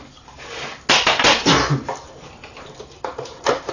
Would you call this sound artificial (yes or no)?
no